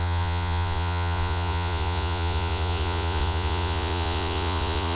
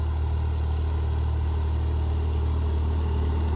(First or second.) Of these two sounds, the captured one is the second